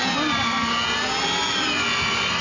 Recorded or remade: recorded